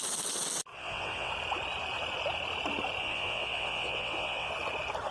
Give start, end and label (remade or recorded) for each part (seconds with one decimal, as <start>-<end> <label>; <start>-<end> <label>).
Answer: 0.0-0.7 recorded; 0.7-1.3 remade; 1.3-3.0 recorded; 3.0-4.5 remade; 4.5-5.1 recorded